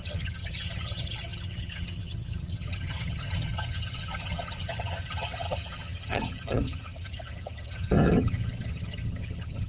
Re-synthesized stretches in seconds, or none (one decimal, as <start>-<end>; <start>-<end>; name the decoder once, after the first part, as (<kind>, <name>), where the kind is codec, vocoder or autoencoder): 0.0-9.7 (vocoder, HiFi-GAN)